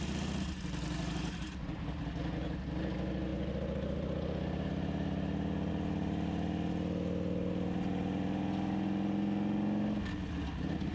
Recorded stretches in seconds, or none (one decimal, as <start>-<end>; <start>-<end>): 0.0-10.9